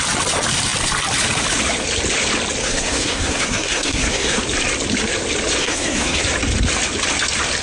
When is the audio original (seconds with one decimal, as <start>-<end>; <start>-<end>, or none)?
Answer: 0.0-2.6; 4.4-5.6; 6.2-7.6